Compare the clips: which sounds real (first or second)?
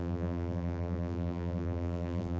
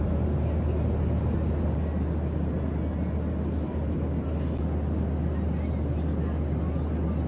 second